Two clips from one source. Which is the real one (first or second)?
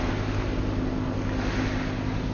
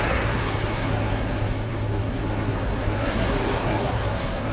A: first